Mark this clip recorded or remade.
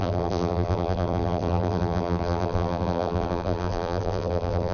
remade